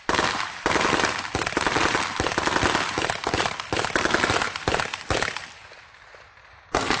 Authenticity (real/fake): real